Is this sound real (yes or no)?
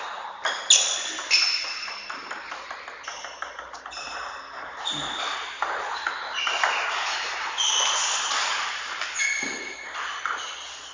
yes